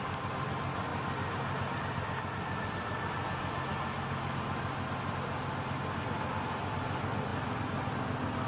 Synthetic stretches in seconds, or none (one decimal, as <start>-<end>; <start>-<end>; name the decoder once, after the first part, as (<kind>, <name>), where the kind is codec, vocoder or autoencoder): none